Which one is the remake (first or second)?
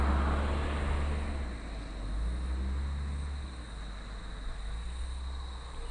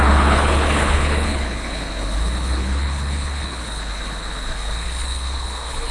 second